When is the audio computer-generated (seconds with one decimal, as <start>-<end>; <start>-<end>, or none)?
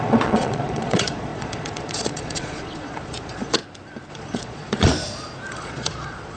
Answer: 0.0-3.6; 4.1-4.9; 5.5-6.4